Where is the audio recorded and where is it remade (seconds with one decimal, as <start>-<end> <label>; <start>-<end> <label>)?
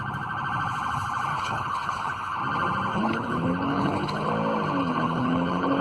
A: 0.0-1.3 recorded; 1.3-2.4 remade; 2.4-2.9 recorded; 2.9-4.3 remade; 4.3-4.8 recorded; 4.8-5.8 remade